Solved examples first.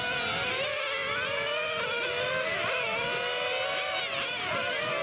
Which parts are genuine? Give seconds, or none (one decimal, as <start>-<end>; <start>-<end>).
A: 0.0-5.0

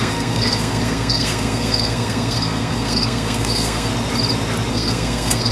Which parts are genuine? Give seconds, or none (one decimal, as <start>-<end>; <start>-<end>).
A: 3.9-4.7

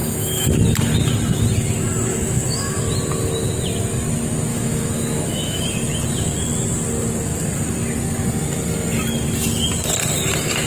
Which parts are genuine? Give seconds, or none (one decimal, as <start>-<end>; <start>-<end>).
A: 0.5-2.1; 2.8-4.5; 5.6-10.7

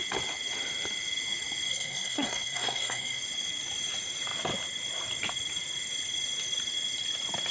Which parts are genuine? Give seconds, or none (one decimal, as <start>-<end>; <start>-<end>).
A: 0.0-1.7; 3.2-7.5